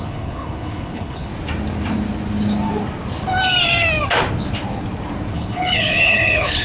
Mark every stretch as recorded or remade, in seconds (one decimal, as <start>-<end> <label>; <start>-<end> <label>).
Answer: 0.0-1.3 remade; 1.3-5.3 recorded; 5.3-6.6 remade